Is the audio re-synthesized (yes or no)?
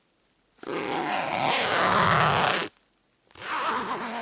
no